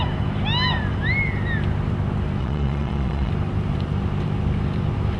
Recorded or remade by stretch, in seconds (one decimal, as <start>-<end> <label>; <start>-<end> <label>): 0.0-2.4 recorded; 2.4-3.3 remade; 3.3-5.2 recorded